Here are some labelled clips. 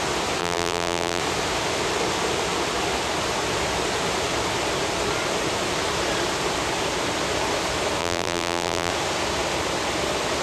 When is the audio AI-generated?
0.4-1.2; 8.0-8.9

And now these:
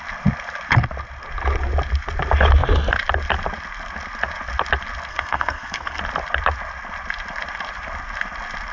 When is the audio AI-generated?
5.1-6.0